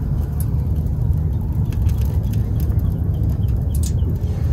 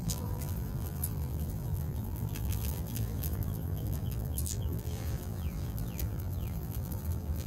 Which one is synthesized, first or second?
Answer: second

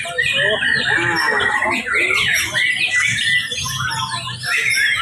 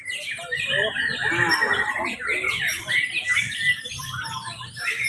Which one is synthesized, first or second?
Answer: second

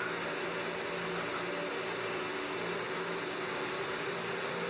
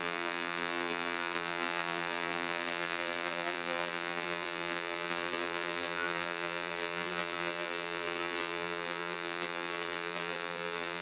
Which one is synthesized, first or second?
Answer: second